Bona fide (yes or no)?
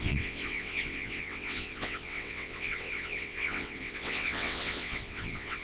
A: no